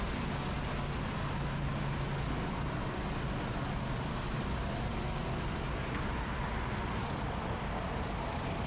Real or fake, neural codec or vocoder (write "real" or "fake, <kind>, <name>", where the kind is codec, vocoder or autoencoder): real